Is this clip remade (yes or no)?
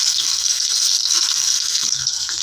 yes